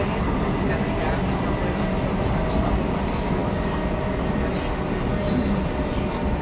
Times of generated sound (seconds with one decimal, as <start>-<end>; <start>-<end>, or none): none